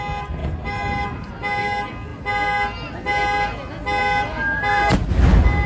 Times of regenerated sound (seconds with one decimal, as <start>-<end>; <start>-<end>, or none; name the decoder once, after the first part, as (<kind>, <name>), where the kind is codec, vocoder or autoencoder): 0.4-1.3 (vocoder, BigVGAN v2)